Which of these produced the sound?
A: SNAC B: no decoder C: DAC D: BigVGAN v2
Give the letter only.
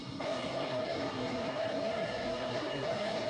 A